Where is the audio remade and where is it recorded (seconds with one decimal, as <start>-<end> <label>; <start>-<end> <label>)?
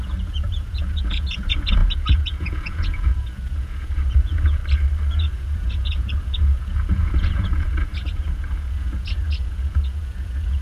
0.0-4.6 remade; 4.6-5.1 recorded; 5.1-10.6 remade